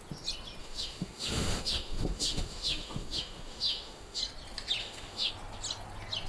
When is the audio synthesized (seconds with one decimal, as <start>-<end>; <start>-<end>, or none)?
0.6-4.2; 4.8-5.3